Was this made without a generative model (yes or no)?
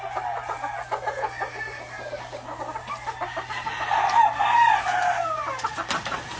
yes